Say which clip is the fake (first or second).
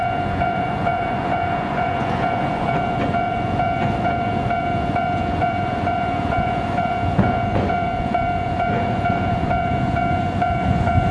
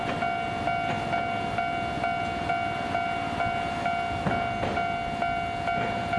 first